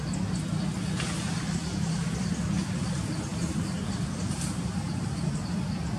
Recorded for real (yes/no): yes